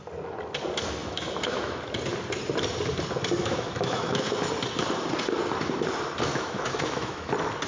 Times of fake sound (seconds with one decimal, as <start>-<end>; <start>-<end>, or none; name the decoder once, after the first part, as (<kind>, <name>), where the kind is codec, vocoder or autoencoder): 1.0-1.8 (autoencoder, DAC-VAE); 3.4-4.4; 6.3-7.3